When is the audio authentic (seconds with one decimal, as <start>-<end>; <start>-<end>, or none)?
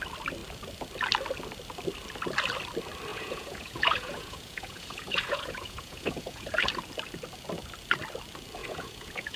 0.0-3.1; 6.6-8.6